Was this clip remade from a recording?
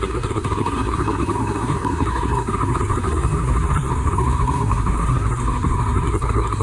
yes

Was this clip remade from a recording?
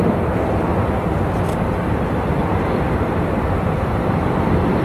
yes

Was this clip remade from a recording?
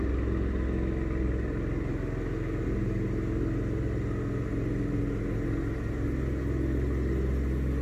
no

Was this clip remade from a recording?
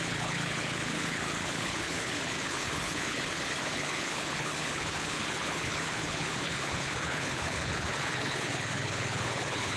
yes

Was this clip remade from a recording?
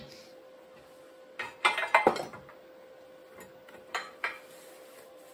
no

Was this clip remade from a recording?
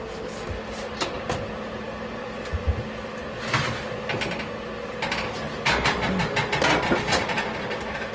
no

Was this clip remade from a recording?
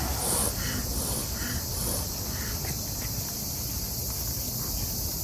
no